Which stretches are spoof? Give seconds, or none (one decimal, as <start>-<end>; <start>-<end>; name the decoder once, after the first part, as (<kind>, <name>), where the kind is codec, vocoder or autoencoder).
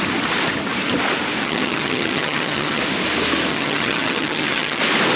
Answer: 1.4-2.8 (vocoder, HiFi-GAN); 3.5-4.8